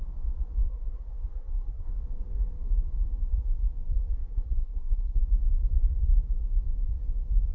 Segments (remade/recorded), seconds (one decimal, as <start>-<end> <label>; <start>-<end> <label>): 0.0-0.6 recorded; 0.6-1.9 remade; 1.9-4.3 recorded; 4.3-5.2 remade; 5.2-7.5 recorded